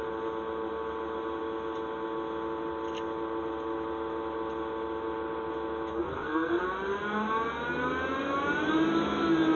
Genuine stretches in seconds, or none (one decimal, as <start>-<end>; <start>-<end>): 0.0-5.9; 6.6-9.6